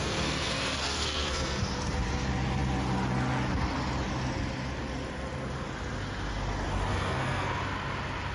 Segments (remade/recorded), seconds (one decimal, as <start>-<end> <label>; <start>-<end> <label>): 0.0-1.6 remade; 1.6-6.9 recorded; 6.9-7.6 remade; 7.6-8.3 recorded